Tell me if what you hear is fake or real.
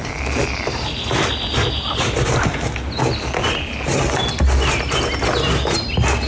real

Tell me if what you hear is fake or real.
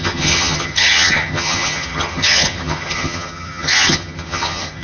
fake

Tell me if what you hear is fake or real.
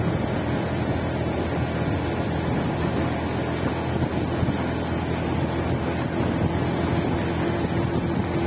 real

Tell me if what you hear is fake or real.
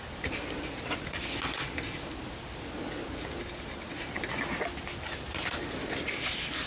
real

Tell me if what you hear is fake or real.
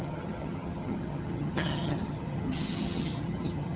fake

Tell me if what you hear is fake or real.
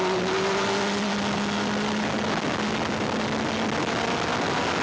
real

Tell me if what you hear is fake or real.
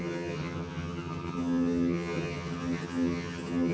fake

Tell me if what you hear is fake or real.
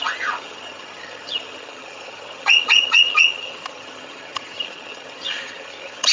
fake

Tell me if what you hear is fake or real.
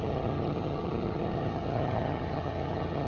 fake